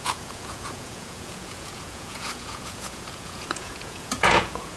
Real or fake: fake